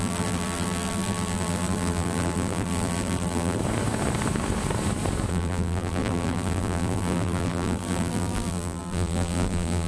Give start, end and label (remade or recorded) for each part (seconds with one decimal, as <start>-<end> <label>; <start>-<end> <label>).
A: 0.0-3.6 remade; 3.6-5.3 recorded; 5.3-9.9 remade